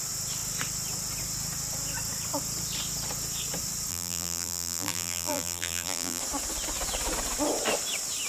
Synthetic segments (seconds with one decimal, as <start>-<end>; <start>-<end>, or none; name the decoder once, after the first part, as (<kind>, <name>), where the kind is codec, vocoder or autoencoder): 3.9-6.2 (vocoder, BigVGAN v2)